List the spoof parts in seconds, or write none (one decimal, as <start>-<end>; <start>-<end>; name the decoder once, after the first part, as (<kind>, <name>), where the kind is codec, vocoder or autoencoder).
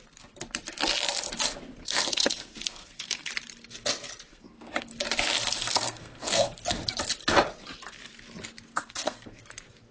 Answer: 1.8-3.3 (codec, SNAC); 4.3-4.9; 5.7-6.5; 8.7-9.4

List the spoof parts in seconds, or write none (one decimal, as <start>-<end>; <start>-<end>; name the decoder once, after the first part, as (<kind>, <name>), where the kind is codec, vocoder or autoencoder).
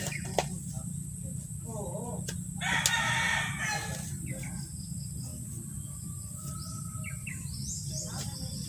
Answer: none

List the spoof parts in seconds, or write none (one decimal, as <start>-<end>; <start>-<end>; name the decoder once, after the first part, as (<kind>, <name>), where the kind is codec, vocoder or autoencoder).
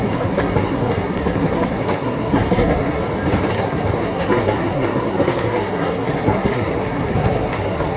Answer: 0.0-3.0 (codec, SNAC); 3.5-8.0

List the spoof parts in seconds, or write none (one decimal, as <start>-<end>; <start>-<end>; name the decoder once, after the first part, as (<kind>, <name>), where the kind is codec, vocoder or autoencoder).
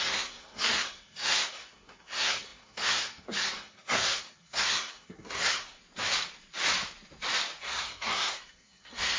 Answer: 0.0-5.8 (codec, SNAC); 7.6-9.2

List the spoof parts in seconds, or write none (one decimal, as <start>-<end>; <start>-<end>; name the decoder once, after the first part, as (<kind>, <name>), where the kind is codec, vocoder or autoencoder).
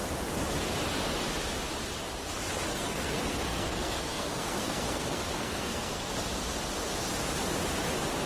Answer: 2.7-6.1 (codec, SNAC)